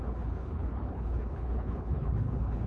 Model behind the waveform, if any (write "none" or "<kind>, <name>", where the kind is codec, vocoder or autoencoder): codec, HILCodec